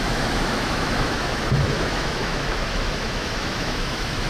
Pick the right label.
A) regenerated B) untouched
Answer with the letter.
A